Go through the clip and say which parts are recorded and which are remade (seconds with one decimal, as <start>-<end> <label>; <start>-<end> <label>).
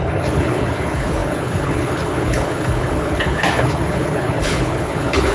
0.0-5.3 remade